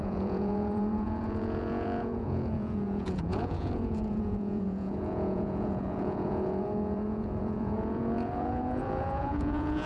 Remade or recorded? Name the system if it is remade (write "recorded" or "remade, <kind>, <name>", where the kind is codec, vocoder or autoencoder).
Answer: remade, vocoder, Vocos